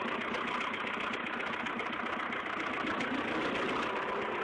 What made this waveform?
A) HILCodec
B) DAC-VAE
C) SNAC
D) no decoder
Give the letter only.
D